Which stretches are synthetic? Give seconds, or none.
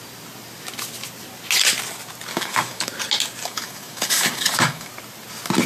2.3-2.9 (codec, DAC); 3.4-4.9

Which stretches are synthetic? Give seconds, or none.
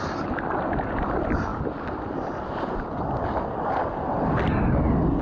none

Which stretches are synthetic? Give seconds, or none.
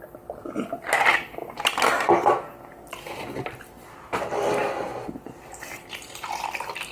none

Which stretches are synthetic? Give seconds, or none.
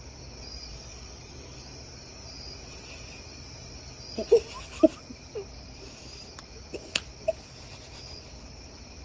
0.7-1.7 (codec, DAC)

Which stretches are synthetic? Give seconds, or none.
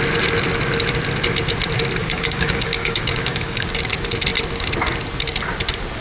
2.0-3.7 (codec, DAC)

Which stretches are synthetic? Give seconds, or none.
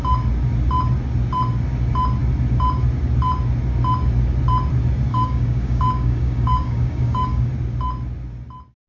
5.1-7.5 (codec, DAC)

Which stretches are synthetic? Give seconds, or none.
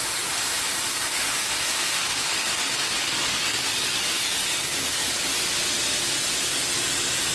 0.9-5.3 (codec, DAC)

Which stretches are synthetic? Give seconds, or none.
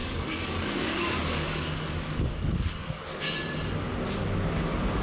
0.0-3.0 (codec, DAC)